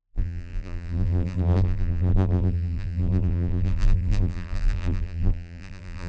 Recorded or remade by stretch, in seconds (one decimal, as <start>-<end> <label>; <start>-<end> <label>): 0.0-6.1 remade